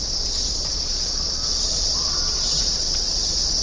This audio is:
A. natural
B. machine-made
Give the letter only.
B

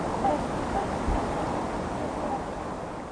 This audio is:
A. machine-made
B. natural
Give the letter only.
B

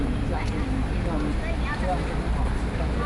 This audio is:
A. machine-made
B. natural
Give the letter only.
B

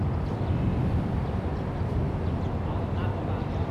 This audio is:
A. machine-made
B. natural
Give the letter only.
B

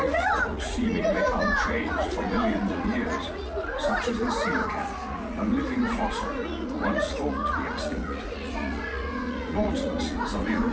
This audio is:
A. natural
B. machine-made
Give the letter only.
B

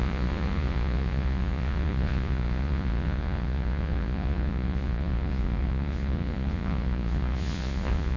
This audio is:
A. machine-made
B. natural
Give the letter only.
A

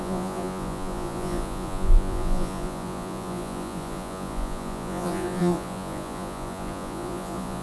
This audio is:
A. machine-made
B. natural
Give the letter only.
A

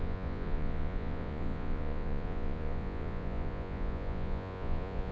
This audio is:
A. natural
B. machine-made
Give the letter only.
B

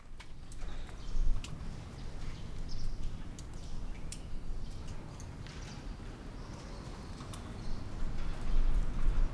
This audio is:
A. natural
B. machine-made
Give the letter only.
A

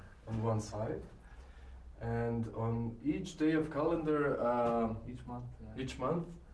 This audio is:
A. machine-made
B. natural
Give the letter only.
B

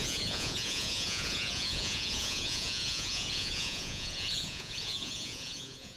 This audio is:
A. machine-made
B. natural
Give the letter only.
A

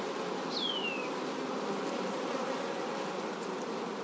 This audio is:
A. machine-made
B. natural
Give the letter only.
B